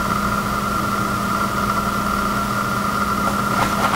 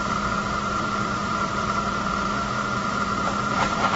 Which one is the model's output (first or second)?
second